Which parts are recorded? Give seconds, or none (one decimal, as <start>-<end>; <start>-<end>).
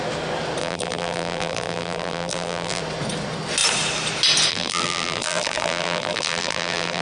0.0-0.6; 2.8-4.5